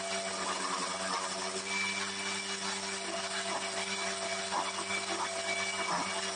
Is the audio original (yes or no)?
yes